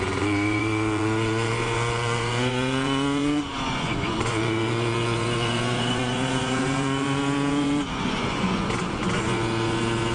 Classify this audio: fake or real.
fake